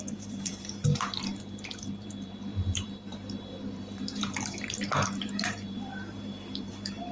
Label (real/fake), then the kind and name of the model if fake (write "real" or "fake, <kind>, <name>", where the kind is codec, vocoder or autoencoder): fake, vocoder, BigVGAN v2